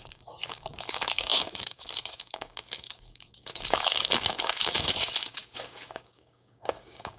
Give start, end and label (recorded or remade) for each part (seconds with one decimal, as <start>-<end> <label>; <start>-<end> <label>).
0.0-7.2 remade